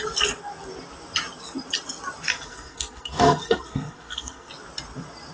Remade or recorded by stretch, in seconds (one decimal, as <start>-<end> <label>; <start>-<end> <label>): 0.0-2.3 recorded; 2.3-4.5 remade; 4.5-5.3 recorded